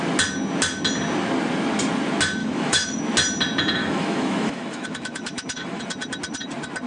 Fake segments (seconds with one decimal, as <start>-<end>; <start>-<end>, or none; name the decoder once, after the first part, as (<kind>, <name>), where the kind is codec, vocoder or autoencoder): 2.4-3.0 (autoencoder, DAC-VAE); 3.8-5.8